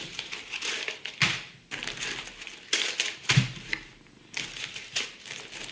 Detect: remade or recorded recorded